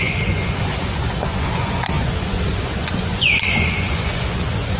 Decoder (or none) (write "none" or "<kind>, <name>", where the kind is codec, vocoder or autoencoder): vocoder, Vocos